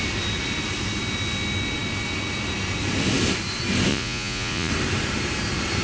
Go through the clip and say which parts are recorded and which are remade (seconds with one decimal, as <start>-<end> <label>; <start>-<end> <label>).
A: 0.0-3.9 recorded; 3.9-4.7 remade; 4.7-5.8 recorded